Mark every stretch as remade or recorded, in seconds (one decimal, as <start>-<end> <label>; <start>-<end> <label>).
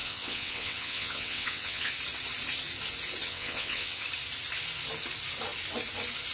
0.0-1.9 remade; 1.9-3.2 recorded; 3.2-4.0 remade; 4.0-6.3 recorded